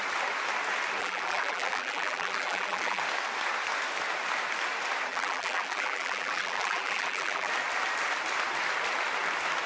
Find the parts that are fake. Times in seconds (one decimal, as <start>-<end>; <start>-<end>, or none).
1.0-3.0; 5.1-7.5